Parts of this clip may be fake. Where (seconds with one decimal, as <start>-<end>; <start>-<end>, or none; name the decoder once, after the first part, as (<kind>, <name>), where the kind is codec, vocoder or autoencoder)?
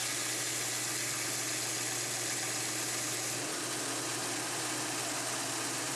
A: none